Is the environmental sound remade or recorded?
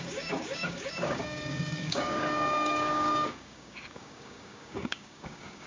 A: remade